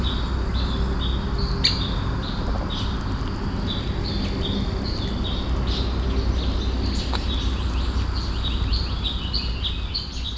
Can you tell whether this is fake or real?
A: real